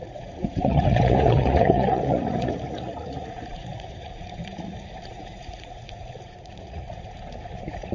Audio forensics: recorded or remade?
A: remade